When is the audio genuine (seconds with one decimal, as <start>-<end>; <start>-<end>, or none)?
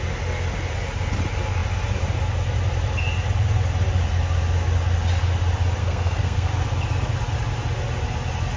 0.0-5.8; 6.5-8.6